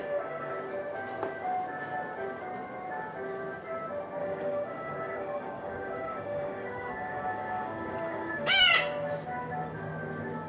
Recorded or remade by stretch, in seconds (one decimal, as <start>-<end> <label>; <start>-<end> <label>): 0.0-0.5 remade; 0.5-4.2 recorded; 4.2-8.6 remade; 8.6-10.5 recorded